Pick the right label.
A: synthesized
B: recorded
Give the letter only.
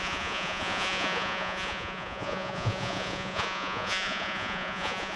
A